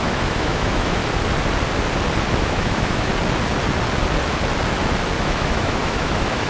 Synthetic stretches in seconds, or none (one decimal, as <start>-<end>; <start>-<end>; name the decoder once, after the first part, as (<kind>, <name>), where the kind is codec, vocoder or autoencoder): 0.0-1.0 (autoencoder, DAC-VAE); 2.4-3.1; 5.2-6.5